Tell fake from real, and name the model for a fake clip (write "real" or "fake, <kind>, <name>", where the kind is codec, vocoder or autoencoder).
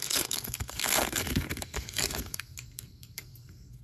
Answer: fake, codec, SNAC